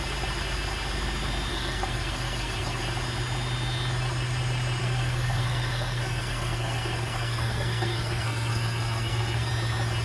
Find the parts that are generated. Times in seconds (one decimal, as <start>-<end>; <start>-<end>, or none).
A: 1.5-2.8; 4.8-9.5